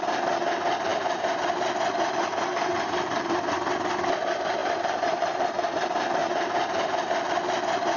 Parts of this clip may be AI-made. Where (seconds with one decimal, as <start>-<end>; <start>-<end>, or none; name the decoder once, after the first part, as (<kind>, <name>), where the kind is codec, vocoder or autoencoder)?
0.9-1.4 (vocoder, BigVGAN v2); 2.5-3.5; 4.6-5.7; 6.2-7.1